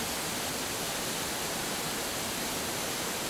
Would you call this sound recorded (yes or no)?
yes